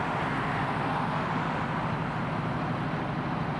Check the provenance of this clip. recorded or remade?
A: recorded